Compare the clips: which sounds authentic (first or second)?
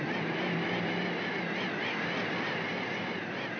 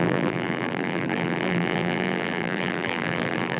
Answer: first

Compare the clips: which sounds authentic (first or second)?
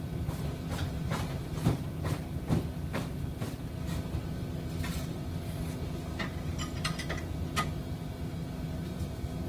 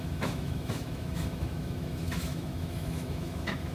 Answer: first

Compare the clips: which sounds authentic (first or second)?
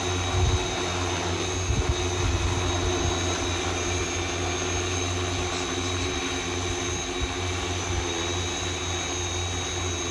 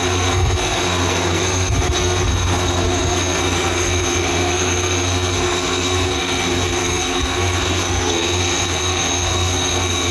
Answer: first